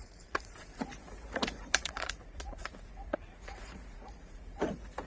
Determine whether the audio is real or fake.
fake